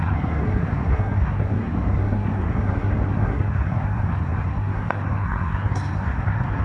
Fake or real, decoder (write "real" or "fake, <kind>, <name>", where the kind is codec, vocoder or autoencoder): fake, codec, SNAC